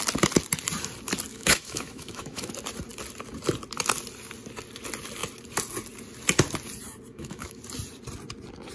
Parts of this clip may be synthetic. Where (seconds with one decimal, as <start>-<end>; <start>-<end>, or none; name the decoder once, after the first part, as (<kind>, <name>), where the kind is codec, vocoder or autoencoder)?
1.3-2.5 (autoencoder, DAC-VAE); 7.1-7.6